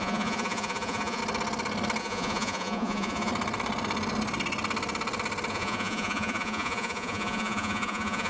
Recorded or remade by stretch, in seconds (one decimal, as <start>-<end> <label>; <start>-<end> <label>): 0.0-1.2 remade; 1.2-2.0 recorded; 2.0-3.3 remade; 3.3-5.5 recorded; 5.5-8.3 remade